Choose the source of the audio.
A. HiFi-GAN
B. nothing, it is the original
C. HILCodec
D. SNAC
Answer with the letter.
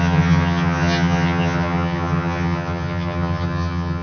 A